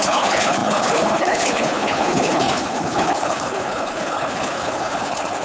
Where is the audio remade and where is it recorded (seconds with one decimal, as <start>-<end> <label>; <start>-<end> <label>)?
0.0-5.4 remade